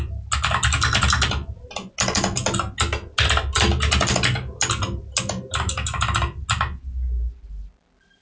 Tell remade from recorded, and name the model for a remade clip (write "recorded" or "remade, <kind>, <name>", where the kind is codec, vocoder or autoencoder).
recorded